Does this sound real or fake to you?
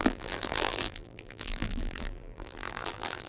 fake